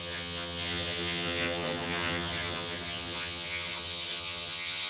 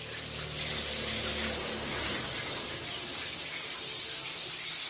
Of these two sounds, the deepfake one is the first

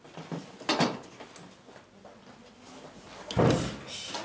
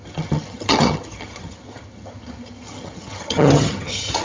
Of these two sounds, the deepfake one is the second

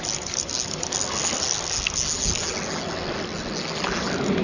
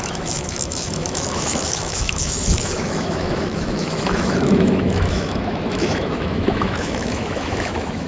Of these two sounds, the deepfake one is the second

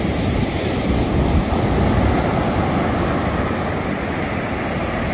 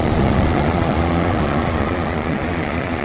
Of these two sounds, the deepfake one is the second